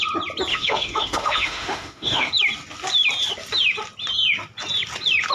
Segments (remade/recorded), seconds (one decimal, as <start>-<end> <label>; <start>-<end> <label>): 0.0-0.5 recorded; 0.5-2.3 remade; 2.3-5.3 recorded